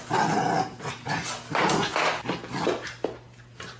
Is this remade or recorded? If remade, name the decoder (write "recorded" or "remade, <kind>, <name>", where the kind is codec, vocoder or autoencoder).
recorded